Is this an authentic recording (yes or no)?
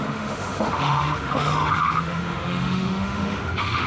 no